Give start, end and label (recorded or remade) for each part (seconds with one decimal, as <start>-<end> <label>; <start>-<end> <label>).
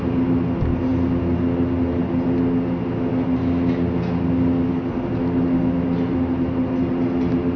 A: 0.0-7.6 recorded